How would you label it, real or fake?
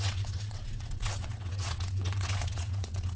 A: fake